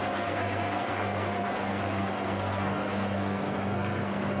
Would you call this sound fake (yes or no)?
yes